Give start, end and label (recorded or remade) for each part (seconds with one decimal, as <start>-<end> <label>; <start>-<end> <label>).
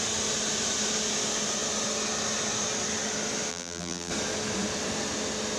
0.0-3.5 recorded; 3.5-4.1 remade; 4.1-5.6 recorded